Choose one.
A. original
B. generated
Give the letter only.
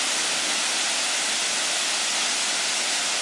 A